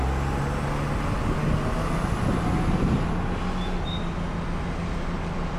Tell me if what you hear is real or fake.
real